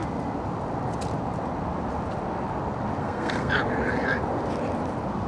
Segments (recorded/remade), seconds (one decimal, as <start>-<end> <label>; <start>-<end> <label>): 0.0-3.0 recorded; 3.0-3.5 remade; 3.5-5.3 recorded